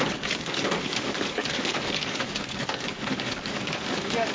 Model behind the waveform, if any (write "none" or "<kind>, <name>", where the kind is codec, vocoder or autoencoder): codec, DAC